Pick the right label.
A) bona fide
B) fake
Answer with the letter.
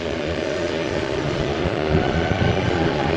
B